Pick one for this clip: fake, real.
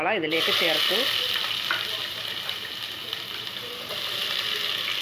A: real